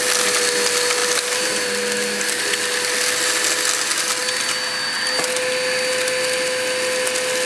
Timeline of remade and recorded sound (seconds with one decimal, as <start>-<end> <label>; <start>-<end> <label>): 0.0-7.5 recorded